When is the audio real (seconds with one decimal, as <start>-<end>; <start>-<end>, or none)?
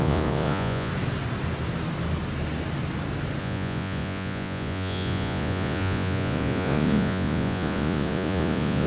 0.9-3.4